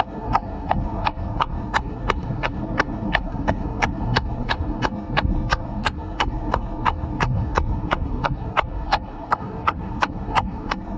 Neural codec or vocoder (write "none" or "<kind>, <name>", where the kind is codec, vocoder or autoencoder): codec, SNAC